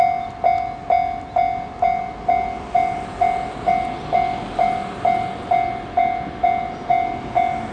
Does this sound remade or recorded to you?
recorded